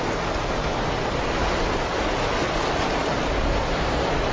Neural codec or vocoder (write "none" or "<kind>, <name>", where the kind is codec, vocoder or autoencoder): none